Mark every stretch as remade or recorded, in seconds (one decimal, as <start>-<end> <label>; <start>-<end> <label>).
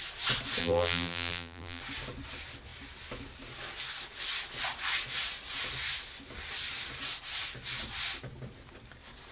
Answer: 0.0-0.6 recorded; 0.6-1.8 remade; 1.8-9.3 recorded